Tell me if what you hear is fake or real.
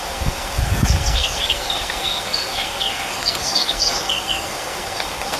fake